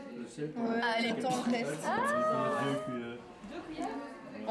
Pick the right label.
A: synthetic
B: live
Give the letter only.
B